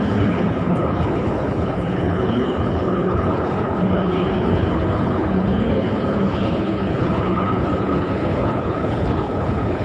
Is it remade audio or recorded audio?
remade